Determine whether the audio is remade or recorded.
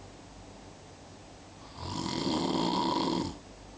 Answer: recorded